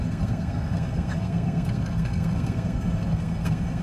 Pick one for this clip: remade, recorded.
remade